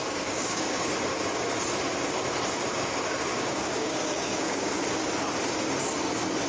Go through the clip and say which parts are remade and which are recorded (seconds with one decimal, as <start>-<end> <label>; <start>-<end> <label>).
0.0-0.8 remade; 0.8-3.3 recorded; 3.3-4.8 remade; 4.8-6.5 recorded